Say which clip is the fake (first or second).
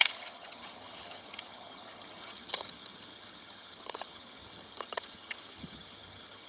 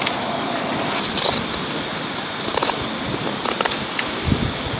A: first